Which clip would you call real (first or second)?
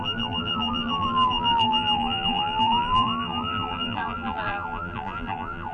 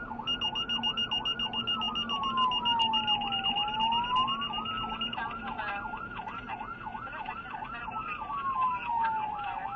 second